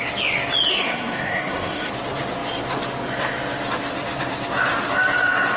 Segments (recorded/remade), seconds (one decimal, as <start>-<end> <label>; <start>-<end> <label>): 0.0-0.7 recorded; 0.7-1.9 remade; 1.9-5.6 recorded

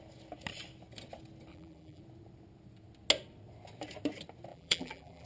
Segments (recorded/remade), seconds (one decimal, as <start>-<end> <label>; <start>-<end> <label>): 0.0-1.5 recorded; 1.5-2.0 remade; 2.0-4.5 recorded; 4.5-5.3 remade

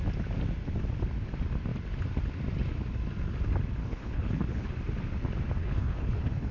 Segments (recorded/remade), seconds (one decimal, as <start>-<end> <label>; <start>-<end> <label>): 0.0-3.8 recorded; 3.8-4.7 remade; 4.7-5.6 recorded; 5.6-6.5 remade